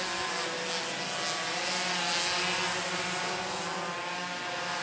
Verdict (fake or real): real